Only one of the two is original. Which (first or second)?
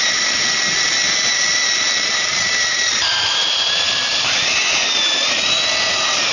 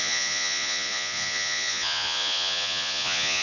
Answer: first